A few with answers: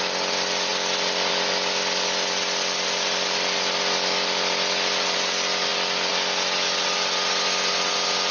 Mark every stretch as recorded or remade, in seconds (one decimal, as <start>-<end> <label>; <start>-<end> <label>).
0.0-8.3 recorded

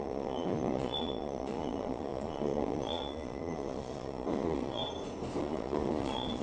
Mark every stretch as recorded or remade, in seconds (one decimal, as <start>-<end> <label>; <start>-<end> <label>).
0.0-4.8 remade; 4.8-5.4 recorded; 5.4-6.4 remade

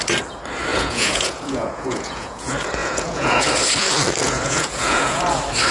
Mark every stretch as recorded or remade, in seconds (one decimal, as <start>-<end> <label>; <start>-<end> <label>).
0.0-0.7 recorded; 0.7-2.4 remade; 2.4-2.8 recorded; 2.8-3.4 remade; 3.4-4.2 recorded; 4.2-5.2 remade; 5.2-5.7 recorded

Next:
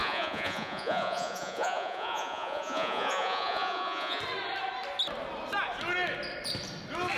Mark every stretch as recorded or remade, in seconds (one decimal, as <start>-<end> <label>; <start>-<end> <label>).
0.0-4.2 remade; 4.2-7.2 recorded

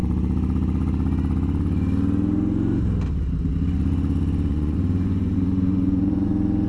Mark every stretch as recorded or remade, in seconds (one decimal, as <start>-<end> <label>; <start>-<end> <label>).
0.0-4.5 recorded; 4.5-6.3 remade; 6.3-6.7 recorded